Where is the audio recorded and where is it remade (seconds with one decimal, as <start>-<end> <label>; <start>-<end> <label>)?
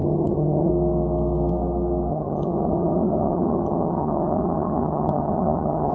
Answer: 0.0-0.7 remade; 0.7-2.1 recorded; 2.1-5.9 remade